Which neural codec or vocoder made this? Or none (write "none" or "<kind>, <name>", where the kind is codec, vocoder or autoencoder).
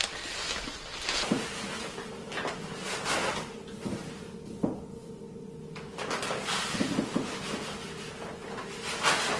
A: none